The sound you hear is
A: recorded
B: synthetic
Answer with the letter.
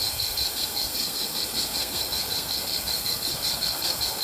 B